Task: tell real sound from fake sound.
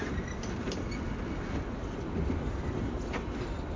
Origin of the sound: real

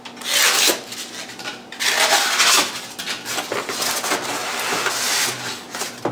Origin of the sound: real